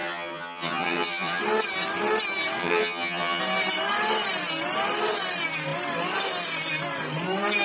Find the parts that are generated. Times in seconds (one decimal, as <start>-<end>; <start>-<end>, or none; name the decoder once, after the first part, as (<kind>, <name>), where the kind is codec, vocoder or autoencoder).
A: 0.0-1.4 (vocoder, HiFi-GAN); 2.6-3.4